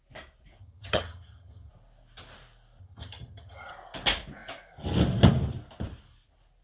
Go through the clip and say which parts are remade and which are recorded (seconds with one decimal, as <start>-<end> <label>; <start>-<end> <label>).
0.0-0.6 recorded; 0.6-1.7 remade; 1.7-2.8 recorded; 2.8-3.7 remade; 3.7-6.6 recorded